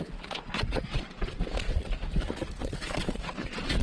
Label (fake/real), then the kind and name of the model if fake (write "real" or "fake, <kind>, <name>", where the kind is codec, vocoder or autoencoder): fake, vocoder, Vocos